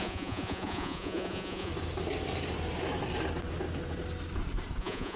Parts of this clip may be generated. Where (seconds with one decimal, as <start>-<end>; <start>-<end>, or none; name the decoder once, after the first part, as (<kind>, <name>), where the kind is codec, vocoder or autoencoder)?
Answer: 0.0-1.7 (vocoder, Vocos); 4.8-5.2